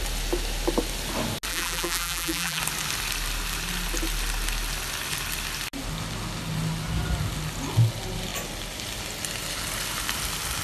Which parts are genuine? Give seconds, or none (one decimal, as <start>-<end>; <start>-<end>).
0.0-1.5; 2.6-10.6